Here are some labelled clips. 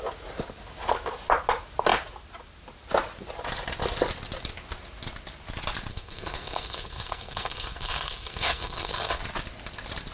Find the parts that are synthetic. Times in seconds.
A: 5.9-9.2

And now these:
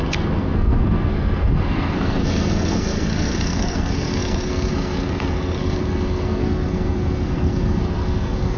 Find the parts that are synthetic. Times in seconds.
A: 0.0-8.6

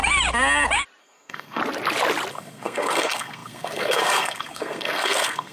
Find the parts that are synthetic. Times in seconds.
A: 1.0-1.6; 2.3-5.5